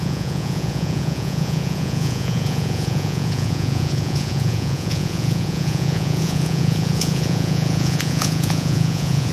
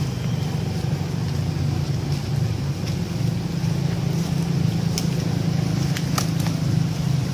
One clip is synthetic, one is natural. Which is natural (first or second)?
second